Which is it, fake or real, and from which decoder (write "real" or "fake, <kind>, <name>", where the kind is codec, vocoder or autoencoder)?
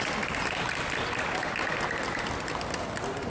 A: real